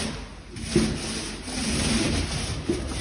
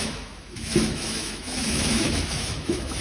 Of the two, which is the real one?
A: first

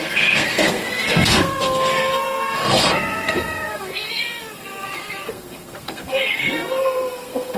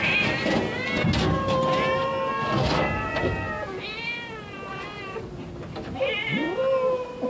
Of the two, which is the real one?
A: second